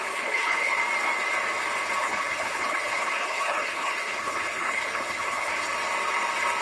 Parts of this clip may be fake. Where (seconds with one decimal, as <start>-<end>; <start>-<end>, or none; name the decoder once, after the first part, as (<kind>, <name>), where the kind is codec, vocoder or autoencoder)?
0.0-0.8 (codec, HILCodec); 2.0-5.5